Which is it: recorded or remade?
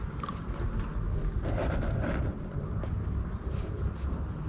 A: recorded